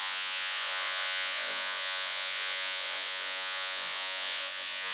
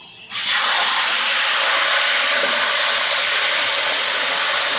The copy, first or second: first